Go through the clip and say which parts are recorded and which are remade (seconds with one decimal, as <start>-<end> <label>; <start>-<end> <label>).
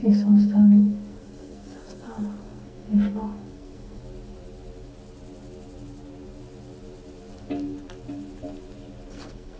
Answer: 0.0-4.0 remade; 4.0-9.1 recorded; 9.1-9.6 remade